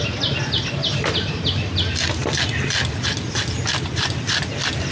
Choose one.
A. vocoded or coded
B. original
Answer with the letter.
B